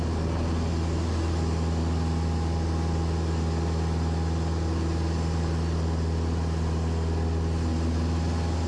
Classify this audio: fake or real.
real